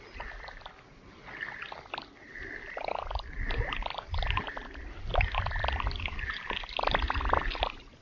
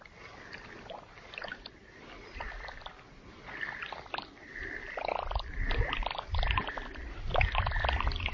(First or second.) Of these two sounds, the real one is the first